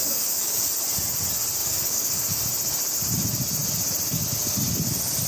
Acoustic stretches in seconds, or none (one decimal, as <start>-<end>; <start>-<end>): 0.7-1.6; 2.4-5.3